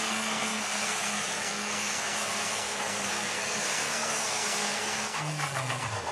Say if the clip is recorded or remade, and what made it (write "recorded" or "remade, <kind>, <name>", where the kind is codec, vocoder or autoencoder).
remade, codec, SNAC